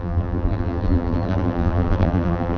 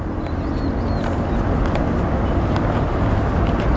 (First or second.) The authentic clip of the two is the second